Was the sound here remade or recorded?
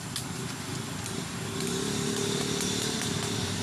recorded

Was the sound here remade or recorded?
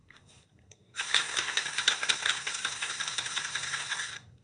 remade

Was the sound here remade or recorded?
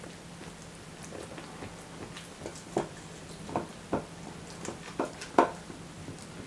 recorded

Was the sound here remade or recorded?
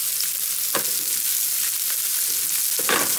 recorded